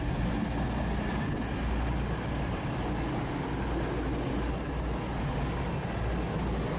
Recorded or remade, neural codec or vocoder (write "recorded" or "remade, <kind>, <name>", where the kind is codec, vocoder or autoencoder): recorded